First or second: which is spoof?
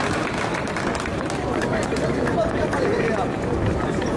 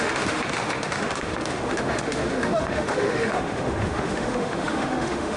second